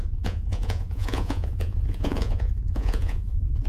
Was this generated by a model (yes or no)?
yes